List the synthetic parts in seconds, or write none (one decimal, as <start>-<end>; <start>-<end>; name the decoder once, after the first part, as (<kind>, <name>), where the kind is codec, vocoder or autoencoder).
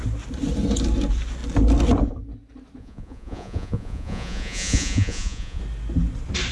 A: 2.8-5.6 (vocoder, Vocos)